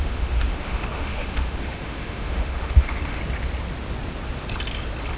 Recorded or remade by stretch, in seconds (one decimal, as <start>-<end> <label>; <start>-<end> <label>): 0.0-3.2 remade; 3.2-5.2 recorded